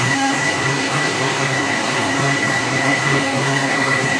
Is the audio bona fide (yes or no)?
no